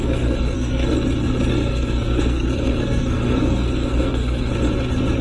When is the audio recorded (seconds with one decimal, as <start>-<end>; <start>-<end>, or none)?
0.9-1.5; 4.5-5.2

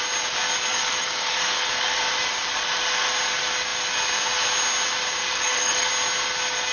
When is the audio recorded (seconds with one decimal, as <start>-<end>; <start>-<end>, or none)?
0.0-0.7; 2.1-5.2; 5.9-6.7

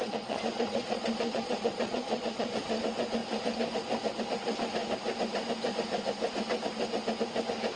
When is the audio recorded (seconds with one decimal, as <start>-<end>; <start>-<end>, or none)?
2.8-7.8

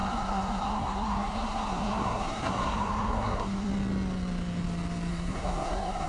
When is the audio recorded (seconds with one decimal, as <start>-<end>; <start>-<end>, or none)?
3.7-5.1